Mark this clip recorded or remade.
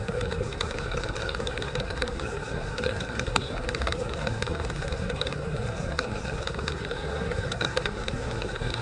remade